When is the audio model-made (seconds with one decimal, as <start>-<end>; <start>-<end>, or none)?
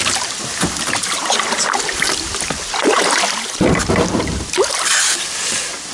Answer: none